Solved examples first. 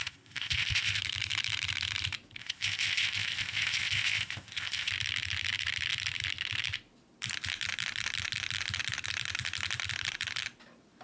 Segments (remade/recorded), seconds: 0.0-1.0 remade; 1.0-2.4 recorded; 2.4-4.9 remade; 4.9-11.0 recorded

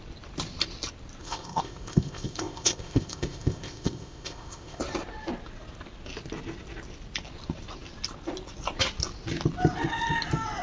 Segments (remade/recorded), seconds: 0.0-1.2 recorded; 1.2-4.8 remade; 4.8-10.6 recorded

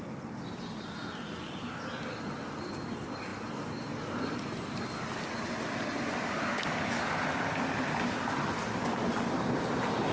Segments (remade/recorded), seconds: 0.0-10.1 recorded

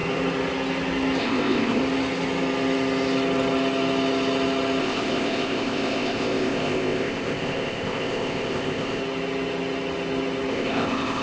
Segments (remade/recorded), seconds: 0.0-1.2 recorded; 1.2-1.8 remade; 1.8-4.8 recorded; 4.8-9.0 remade; 9.0-10.5 recorded; 10.5-11.2 remade

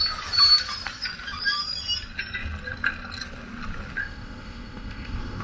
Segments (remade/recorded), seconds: 0.0-4.0 recorded; 4.0-5.4 remade

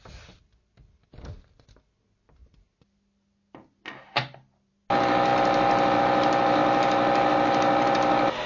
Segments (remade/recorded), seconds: 0.0-8.5 recorded

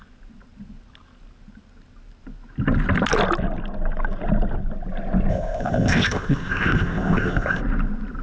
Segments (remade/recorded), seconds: 0.0-5.3 recorded; 5.3-7.6 remade; 7.6-8.2 recorded